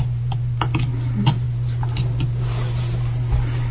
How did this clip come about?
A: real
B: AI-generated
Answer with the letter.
A